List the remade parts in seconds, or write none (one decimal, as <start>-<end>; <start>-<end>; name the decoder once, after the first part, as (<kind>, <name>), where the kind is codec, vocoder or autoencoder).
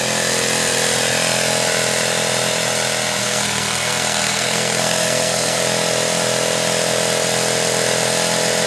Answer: 3.2-5.6 (codec, SNAC)